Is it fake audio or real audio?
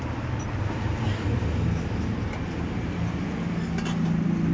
real